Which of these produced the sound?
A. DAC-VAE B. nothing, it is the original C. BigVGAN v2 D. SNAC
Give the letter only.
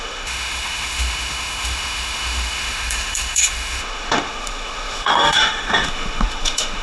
A